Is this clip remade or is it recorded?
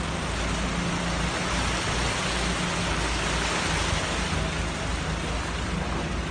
recorded